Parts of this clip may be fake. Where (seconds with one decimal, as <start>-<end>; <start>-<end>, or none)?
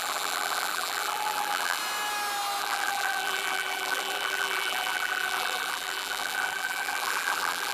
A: 0.0-1.8; 2.6-7.7